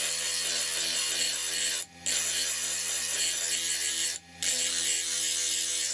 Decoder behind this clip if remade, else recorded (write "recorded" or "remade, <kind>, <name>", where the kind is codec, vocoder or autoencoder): recorded